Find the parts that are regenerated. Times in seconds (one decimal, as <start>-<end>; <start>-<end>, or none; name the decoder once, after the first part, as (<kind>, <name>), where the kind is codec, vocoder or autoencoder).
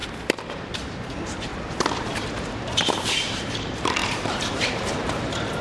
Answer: 0.7-1.5 (vocoder, BigVGAN v2); 2.0-5.6